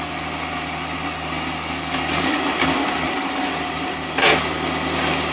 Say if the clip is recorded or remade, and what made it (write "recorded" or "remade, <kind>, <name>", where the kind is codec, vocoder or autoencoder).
recorded